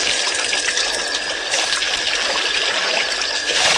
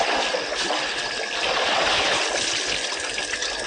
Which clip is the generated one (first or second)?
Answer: first